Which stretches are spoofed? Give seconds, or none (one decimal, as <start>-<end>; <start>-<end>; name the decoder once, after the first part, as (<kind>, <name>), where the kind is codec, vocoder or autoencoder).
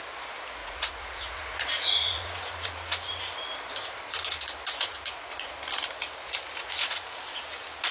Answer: 0.6-2.7 (vocoder, Vocos); 4.7-5.5; 6.5-7.2